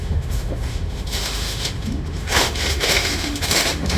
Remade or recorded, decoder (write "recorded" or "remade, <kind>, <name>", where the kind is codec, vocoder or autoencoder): remade, autoencoder, DAC-VAE